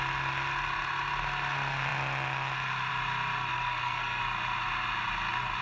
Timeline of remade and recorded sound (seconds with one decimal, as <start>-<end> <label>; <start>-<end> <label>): 0.0-3.5 recorded; 3.5-4.2 remade; 4.2-5.6 recorded